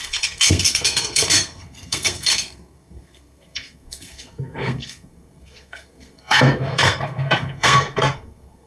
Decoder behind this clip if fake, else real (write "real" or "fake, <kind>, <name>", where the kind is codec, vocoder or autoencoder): fake, codec, SNAC